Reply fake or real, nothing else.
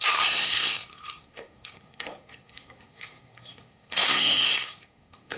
fake